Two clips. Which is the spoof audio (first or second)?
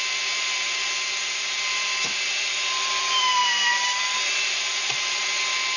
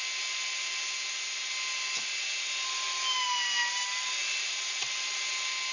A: first